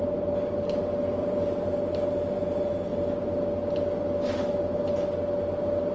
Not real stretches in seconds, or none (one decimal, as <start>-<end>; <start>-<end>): 1.2-1.7